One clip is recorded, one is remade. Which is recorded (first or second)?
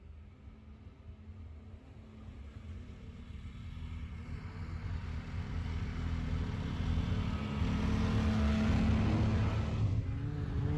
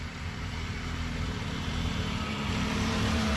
first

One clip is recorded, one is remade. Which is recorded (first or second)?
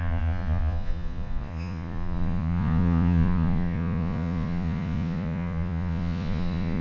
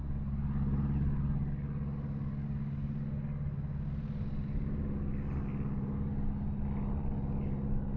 second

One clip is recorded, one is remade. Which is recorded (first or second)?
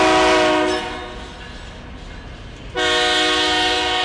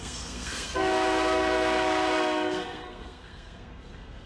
first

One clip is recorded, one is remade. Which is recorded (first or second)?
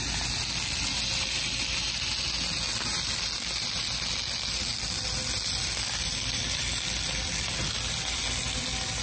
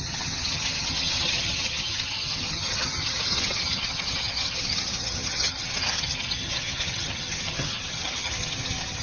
first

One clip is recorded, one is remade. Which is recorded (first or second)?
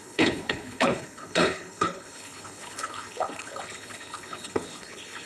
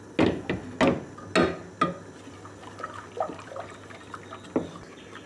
second